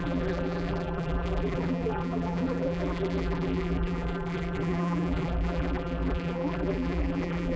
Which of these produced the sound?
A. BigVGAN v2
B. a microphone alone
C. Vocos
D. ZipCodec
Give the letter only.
A